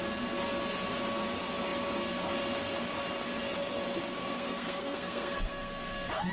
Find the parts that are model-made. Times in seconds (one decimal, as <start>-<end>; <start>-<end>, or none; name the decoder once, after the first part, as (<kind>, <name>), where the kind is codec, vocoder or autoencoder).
4.2-6.3 (codec, SNAC)